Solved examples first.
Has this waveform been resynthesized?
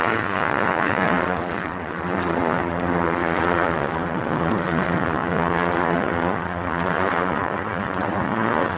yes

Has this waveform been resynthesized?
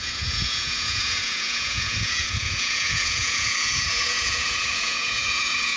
yes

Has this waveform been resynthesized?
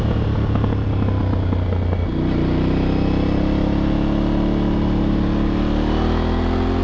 no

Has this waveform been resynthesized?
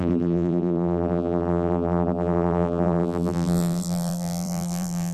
yes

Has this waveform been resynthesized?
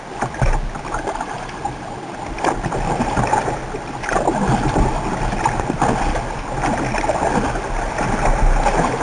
no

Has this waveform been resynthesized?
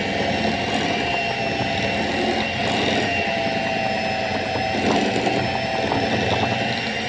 no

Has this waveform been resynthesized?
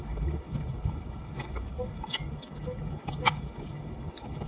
yes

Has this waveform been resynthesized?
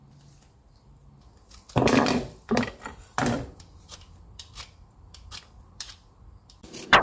yes